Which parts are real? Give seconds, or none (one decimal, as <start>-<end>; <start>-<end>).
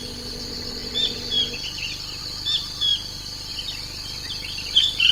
0.0-5.1